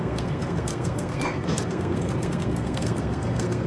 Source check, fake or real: fake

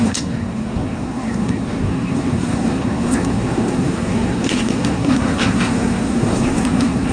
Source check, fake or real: fake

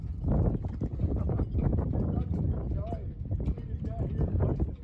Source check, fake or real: real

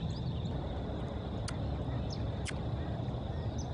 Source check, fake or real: real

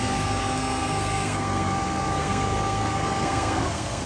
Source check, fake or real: fake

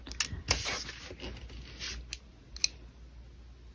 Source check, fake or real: real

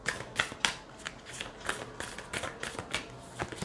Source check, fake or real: real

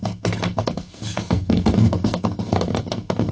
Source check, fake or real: fake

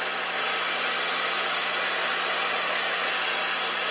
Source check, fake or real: real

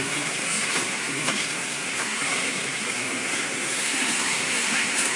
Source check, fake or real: fake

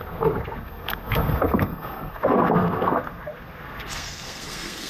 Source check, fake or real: fake